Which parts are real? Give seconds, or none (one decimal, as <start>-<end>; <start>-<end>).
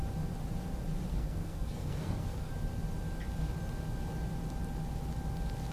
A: 0.0-1.1; 2.5-5.7